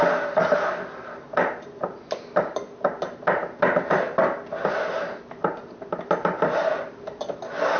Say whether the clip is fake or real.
real